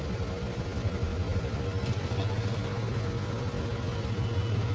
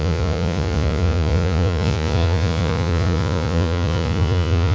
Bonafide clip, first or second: first